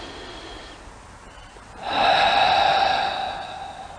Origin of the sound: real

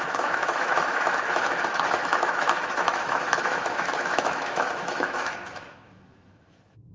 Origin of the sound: fake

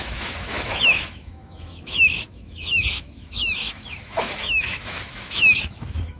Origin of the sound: fake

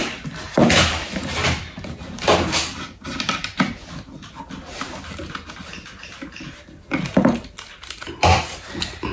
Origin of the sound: real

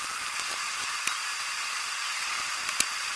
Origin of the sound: real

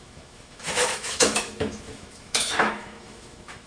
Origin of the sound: fake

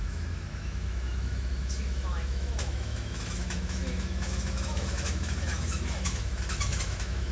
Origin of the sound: fake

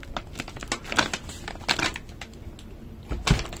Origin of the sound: real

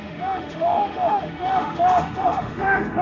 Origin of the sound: fake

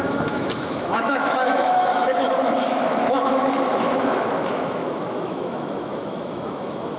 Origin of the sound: fake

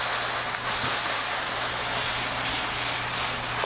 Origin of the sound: real